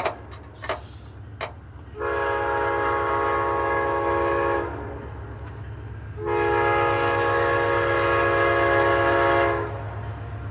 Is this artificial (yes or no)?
no